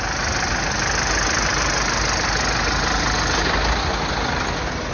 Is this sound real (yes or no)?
yes